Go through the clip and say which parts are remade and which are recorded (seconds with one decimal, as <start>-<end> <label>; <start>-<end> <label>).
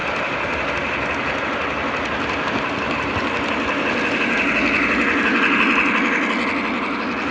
0.0-7.3 recorded